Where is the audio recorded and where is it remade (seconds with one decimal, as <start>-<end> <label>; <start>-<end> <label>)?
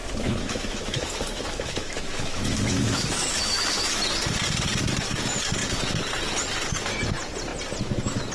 0.0-4.0 remade; 4.0-8.3 recorded